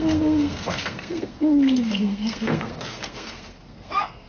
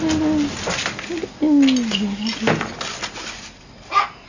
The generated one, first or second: first